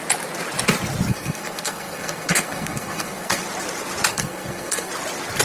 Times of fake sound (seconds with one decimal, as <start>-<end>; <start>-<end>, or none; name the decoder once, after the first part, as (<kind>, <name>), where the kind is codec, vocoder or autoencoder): 1.1-3.4 (codec, SNAC); 4.1-4.9